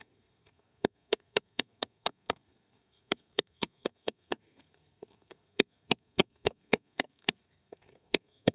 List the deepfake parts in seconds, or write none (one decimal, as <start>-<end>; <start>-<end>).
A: 0.0-8.5

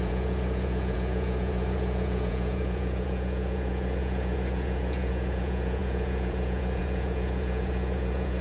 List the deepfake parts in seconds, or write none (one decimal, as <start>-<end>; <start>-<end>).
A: 0.0-8.4

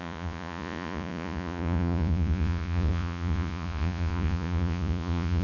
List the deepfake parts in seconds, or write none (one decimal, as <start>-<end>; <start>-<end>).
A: 0.0-5.4

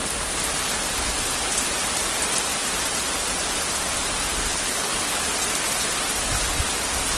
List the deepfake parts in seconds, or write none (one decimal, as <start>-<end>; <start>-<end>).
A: 4.5-5.2

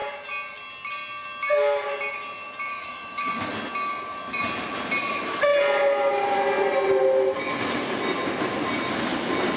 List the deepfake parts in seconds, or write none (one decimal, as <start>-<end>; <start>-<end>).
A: 2.8-3.3

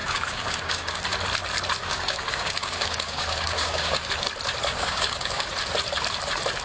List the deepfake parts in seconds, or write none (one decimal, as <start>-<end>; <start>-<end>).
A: 0.0-1.0; 1.8-4.1; 4.7-5.5

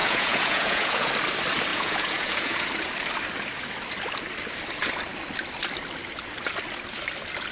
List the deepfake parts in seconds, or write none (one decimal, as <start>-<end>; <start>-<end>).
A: 0.0-1.1; 1.7-2.7